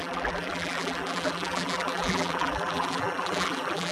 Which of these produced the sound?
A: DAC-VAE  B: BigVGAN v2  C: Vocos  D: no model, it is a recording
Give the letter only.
B